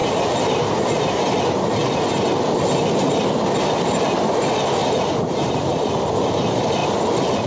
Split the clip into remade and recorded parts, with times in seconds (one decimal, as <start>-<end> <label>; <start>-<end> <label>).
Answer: 0.0-7.5 recorded